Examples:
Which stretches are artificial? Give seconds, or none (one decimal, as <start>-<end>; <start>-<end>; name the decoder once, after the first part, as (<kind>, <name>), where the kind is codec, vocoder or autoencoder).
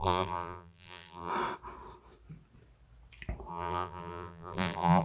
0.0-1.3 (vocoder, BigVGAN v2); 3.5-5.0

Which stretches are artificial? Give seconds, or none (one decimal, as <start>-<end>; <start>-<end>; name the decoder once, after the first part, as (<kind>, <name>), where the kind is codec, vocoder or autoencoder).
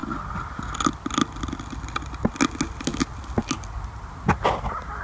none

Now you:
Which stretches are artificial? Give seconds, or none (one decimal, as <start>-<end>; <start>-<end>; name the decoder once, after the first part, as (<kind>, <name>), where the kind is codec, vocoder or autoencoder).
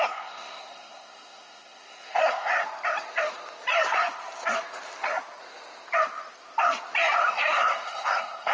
0.0-2.5 (codec, SNAC); 7.3-8.5